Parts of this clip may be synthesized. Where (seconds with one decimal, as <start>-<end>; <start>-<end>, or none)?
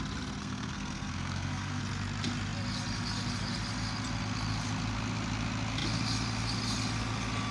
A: 0.4-1.8